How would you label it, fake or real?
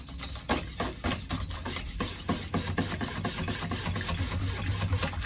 real